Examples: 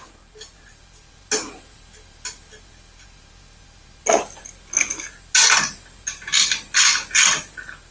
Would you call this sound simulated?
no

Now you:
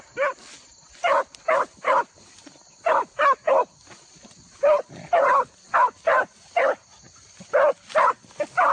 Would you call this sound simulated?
no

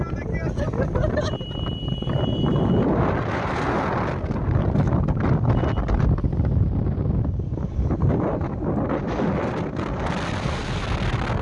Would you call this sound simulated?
no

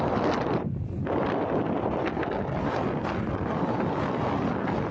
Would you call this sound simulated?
no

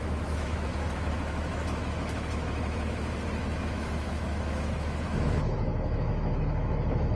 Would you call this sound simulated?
yes